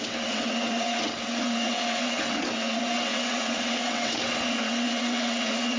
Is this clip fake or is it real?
fake